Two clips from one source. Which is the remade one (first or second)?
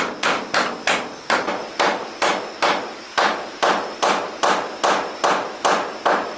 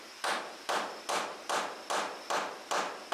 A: second